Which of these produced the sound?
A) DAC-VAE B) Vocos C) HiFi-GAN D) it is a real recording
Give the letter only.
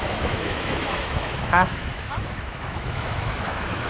A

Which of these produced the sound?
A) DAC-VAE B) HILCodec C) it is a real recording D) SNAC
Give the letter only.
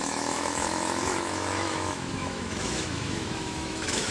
A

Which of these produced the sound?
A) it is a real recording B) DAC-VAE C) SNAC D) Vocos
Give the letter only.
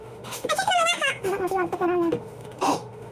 B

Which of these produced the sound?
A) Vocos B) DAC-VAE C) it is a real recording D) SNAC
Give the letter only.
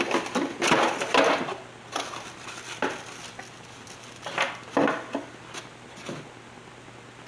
C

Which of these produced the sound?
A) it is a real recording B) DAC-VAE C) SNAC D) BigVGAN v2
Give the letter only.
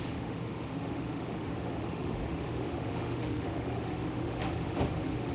B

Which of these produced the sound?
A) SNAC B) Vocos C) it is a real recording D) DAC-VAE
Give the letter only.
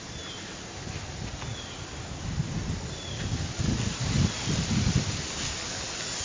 C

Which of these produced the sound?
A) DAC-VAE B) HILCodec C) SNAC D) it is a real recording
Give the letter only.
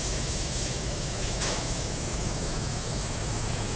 A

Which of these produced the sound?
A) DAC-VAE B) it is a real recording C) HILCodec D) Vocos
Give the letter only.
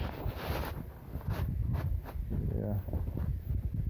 B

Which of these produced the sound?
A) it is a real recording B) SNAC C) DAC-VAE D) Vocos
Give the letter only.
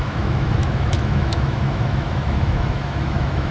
C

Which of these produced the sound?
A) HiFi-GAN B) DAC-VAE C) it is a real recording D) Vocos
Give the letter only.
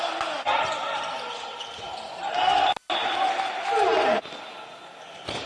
C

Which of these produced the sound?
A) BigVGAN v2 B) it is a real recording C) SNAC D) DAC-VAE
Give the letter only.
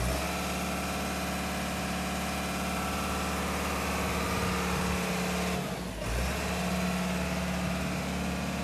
B